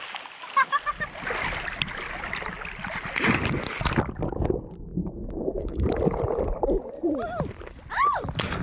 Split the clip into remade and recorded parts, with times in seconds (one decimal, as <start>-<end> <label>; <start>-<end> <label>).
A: 0.0-4.9 recorded; 4.9-5.9 remade; 5.9-8.6 recorded